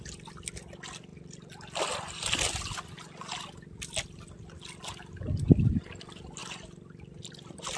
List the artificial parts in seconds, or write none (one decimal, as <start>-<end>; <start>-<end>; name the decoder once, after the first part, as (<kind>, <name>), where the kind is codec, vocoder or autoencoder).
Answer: 6.4-7.8 (vocoder, BigVGAN v2)